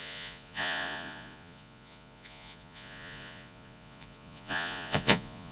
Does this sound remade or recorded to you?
remade